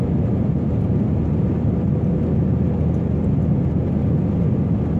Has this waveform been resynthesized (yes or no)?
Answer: no